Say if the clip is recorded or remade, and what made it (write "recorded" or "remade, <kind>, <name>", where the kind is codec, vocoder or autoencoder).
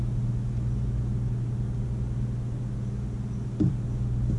recorded